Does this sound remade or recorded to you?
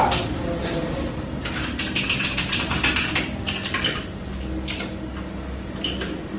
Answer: recorded